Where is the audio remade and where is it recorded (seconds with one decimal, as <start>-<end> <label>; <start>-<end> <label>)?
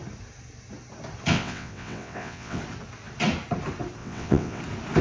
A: 0.0-1.3 recorded; 1.3-2.6 remade; 2.6-4.0 recorded; 4.0-4.6 remade; 4.6-5.0 recorded